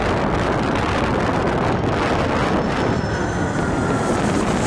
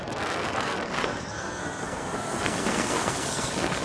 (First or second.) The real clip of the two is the first